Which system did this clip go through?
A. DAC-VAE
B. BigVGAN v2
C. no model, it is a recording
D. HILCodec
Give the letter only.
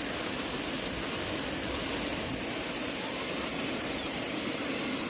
C